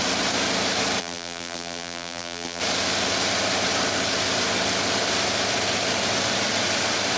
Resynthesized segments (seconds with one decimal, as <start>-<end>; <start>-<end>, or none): 1.0-2.6